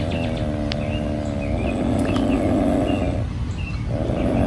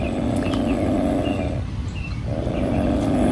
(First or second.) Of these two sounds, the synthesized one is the second